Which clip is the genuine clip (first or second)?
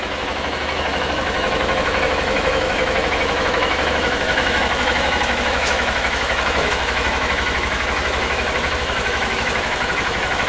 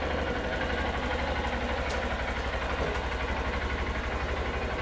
second